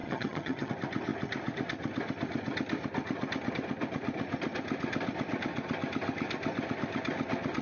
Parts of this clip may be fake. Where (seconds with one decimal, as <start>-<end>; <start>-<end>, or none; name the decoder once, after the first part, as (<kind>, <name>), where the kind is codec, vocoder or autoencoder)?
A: 0.0-0.7 (vocoder, HiFi-GAN)